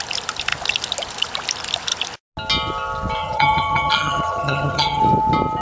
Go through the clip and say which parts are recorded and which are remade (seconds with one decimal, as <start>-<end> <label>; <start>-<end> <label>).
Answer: 0.0-3.2 recorded; 3.2-5.0 remade; 5.0-5.6 recorded